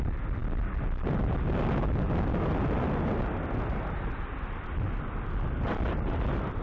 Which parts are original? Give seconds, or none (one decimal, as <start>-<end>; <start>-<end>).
0.0-6.6